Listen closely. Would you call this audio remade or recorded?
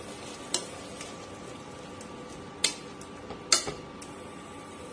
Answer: recorded